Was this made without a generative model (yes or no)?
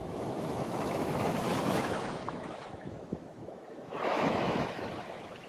no